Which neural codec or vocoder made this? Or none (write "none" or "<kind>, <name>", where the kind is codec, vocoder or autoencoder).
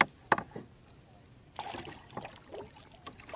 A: none